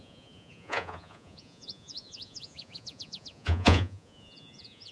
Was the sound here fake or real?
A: fake